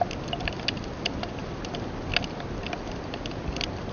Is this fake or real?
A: real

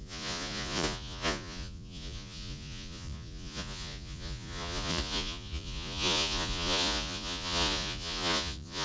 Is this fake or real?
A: fake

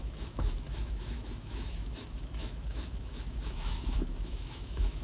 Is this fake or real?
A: fake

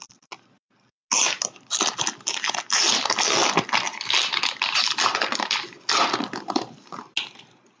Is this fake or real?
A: real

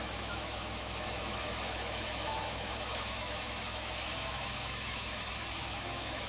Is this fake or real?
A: fake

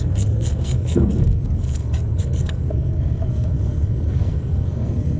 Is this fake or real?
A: fake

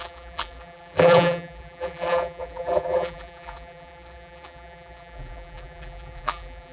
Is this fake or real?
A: fake